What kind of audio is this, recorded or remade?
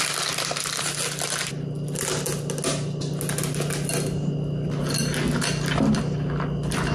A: recorded